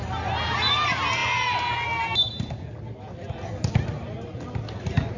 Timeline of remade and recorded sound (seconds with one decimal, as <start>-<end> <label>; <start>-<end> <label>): 0.0-5.2 recorded